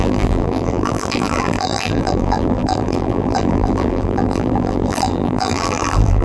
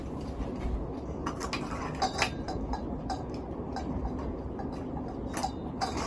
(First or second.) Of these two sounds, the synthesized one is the first